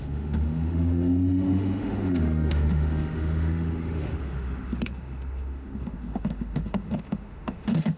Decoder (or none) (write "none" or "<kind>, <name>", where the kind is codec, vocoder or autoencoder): autoencoder, DAC-VAE